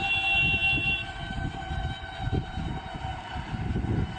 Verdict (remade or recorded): recorded